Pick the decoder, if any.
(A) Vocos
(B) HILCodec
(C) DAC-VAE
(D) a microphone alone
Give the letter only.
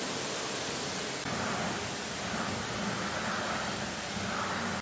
D